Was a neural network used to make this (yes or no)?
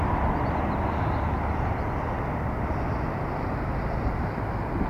no